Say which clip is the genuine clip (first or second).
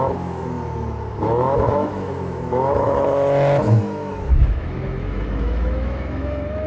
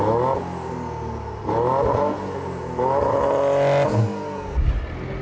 second